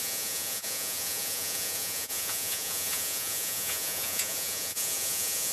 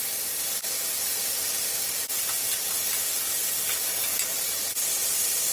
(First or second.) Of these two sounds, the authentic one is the second